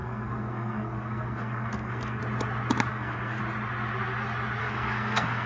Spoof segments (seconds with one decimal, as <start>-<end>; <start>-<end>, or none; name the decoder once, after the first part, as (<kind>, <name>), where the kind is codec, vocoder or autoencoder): 0.0-2.2 (codec, SNAC); 2.9-3.4; 4.6-5.5

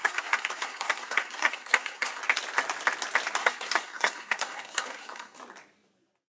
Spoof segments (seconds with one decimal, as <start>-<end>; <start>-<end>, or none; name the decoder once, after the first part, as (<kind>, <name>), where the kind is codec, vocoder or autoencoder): 0.0-2.2 (codec, SNAC); 3.4-5.4

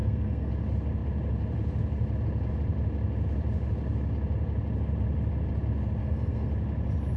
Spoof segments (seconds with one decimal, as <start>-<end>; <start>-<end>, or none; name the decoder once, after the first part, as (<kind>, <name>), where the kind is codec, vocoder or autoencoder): 0.0-0.5 (codec, SNAC); 6.0-6.5

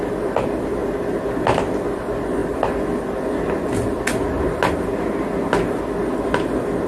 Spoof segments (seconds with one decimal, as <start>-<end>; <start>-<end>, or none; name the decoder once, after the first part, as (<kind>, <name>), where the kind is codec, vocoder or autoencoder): none